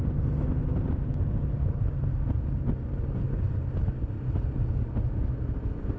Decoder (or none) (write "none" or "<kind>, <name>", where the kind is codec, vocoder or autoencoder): none